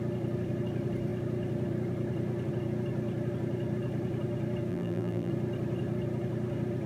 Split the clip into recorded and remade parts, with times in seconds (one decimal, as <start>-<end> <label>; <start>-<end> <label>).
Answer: 0.0-4.7 recorded; 4.7-5.3 remade; 5.3-6.9 recorded